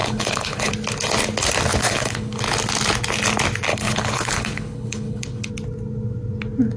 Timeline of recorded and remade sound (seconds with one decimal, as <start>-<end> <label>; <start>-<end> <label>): 0.0-0.7 remade; 0.7-1.7 recorded; 1.7-2.4 remade; 2.4-3.7 recorded; 3.7-5.5 remade; 5.5-6.8 recorded